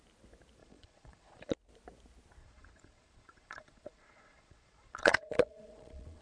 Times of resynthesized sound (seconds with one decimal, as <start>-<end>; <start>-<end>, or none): 0.6-1.5; 2.4-6.2